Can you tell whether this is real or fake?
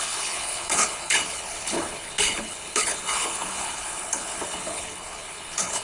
fake